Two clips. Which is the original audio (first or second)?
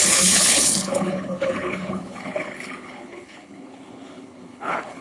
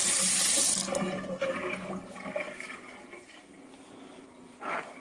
second